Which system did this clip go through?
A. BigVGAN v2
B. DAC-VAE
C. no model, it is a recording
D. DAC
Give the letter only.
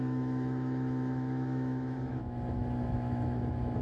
B